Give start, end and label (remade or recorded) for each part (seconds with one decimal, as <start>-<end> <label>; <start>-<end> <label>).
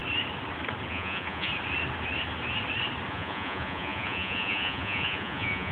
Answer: 0.0-0.9 recorded; 0.9-1.5 remade; 1.5-3.1 recorded; 3.1-5.7 remade